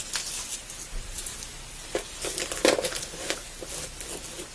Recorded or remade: recorded